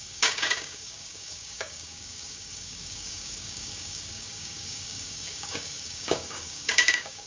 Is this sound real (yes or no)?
no